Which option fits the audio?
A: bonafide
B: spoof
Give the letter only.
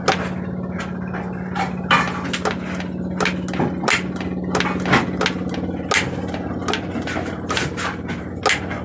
A